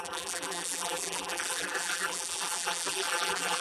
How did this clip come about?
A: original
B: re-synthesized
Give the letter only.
B